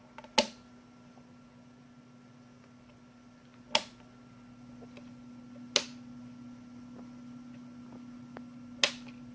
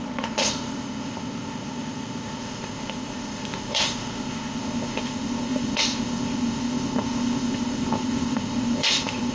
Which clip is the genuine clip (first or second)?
first